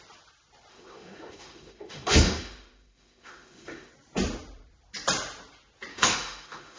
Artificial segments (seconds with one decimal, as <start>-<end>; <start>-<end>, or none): 0.7-3.9; 5.9-6.8